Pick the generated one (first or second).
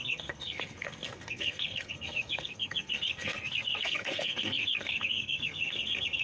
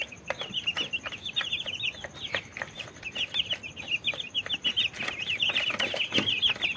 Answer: first